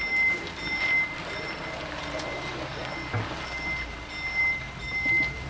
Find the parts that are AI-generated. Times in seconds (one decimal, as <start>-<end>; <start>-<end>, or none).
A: 0.0-2.8; 4.4-5.5